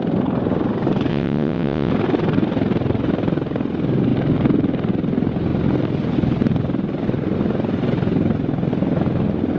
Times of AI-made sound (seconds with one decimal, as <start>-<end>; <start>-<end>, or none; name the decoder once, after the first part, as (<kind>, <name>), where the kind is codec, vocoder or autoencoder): 1.1-1.9 (vocoder, WaveNeXt)